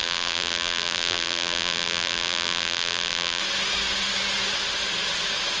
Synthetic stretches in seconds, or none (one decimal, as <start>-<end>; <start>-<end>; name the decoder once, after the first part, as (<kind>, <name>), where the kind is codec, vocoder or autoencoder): 0.0-3.4 (vocoder, BigVGAN v2)